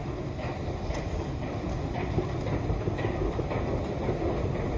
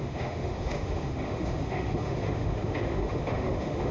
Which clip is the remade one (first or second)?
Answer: second